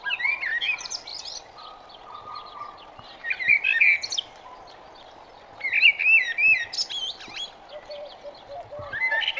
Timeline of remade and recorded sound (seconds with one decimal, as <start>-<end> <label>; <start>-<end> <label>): 0.0-9.4 recorded